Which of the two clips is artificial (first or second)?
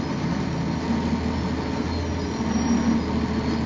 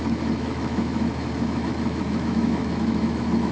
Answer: second